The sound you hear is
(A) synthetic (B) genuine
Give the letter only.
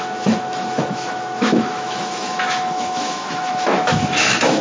A